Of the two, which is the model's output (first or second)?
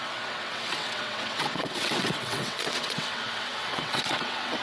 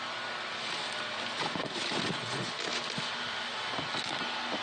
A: first